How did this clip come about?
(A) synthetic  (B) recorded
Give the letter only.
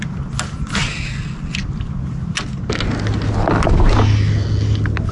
B